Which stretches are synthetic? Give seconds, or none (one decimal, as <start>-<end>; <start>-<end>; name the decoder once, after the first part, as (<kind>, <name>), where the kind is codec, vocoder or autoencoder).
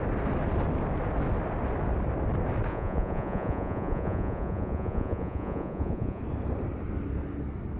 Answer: 2.7-6.2 (vocoder, Vocos)